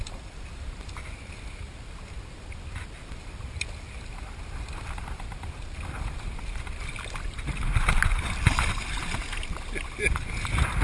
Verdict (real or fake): real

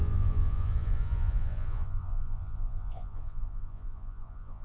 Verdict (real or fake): fake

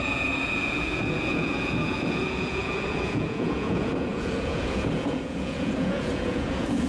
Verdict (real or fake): fake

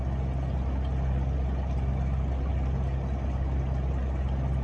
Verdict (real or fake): real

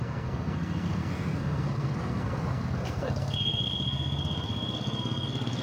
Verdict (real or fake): fake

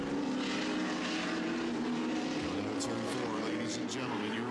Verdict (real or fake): real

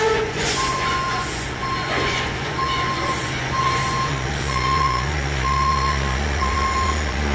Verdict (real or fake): fake